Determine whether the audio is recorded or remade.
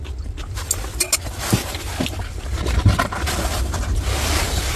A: recorded